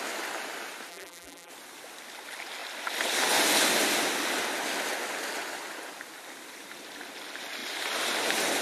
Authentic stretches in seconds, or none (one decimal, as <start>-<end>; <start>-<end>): 0.0-0.9; 1.5-8.6

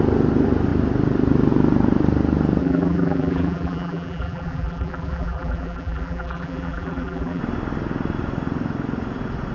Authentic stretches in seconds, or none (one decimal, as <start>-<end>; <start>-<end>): 0.0-2.6; 7.4-9.5

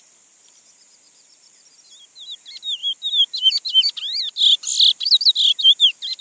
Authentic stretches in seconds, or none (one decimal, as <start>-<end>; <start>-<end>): 0.0-6.2

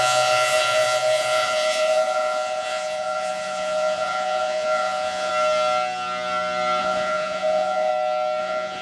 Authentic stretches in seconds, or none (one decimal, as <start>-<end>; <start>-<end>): 5.3-6.8; 7.9-8.4